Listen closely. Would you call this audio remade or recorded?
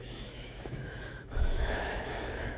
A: remade